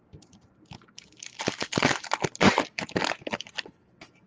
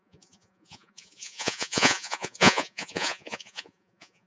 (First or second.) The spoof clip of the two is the second